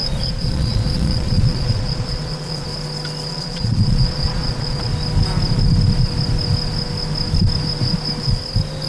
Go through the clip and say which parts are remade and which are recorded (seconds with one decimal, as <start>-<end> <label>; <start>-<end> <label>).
0.0-2.7 remade; 2.7-3.3 recorded; 3.3-4.9 remade; 4.9-8.9 recorded